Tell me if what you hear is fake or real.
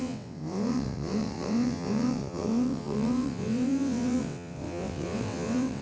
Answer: fake